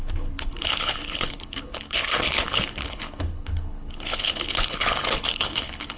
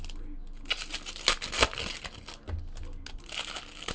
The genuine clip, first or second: second